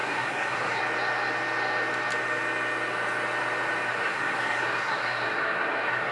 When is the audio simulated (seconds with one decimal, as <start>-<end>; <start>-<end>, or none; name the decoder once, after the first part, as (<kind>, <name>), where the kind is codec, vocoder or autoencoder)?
0.0-0.8 (codec, SNAC); 3.9-6.1